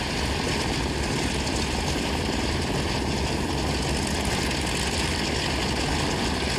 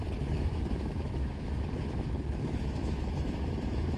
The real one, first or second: first